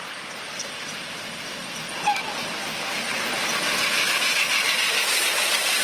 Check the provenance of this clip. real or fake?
real